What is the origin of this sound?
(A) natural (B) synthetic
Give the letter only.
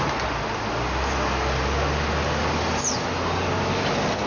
A